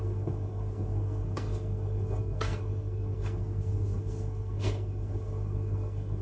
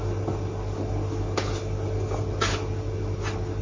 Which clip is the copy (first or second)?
first